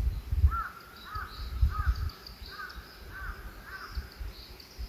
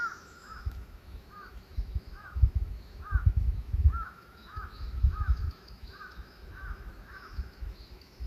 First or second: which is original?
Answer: first